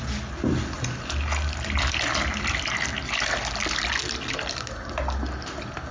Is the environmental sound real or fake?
real